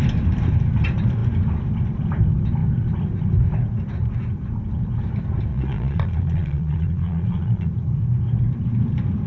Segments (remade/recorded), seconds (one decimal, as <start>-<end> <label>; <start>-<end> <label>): 0.0-5.5 recorded; 5.5-7.7 remade; 7.7-9.3 recorded